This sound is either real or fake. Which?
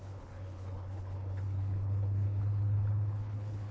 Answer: fake